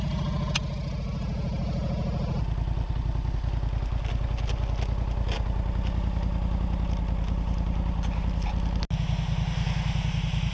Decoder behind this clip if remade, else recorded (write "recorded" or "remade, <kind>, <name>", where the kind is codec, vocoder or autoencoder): recorded